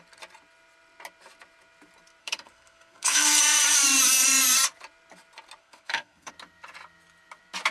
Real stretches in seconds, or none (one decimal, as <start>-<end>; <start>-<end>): 0.0-2.2; 3.4-5.6; 6.3-7.7